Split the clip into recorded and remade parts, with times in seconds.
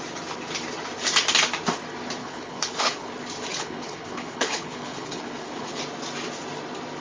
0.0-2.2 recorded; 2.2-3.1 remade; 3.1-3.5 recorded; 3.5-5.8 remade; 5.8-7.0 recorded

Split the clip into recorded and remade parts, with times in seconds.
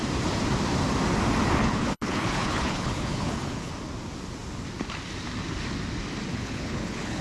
0.0-1.6 recorded; 1.6-3.7 remade; 3.7-6.3 recorded; 6.3-7.2 remade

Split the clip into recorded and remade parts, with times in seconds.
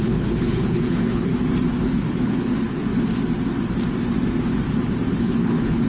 0.0-1.3 remade; 1.3-1.8 recorded; 1.8-2.8 remade; 2.8-5.1 recorded; 5.1-5.9 remade